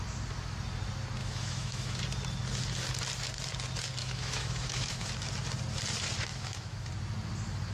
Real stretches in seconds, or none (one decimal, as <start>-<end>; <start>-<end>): 0.0-1.2; 2.0-4.0; 5.1-6.3; 6.9-7.7